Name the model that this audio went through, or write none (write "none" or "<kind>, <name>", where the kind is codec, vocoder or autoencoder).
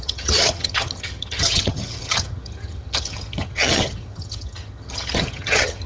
vocoder, HiFi-GAN